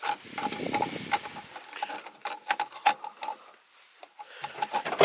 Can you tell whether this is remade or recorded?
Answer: recorded